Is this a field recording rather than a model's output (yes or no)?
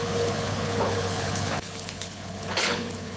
no